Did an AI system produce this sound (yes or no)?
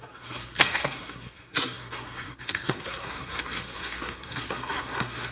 yes